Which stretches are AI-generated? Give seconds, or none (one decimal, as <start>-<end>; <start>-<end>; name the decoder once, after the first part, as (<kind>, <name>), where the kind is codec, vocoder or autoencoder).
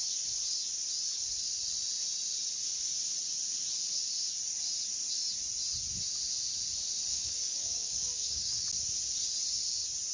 7.1-8.6 (codec, DAC)